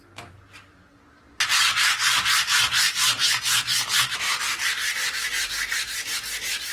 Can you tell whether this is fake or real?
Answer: fake